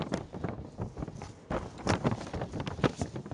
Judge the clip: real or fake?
real